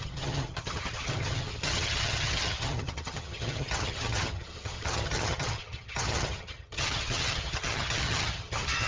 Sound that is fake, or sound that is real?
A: fake